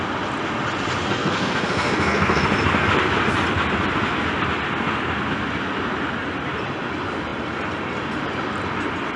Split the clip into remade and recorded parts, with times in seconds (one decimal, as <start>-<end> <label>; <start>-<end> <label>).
0.0-1.1 recorded; 1.1-2.4 remade; 2.4-9.2 recorded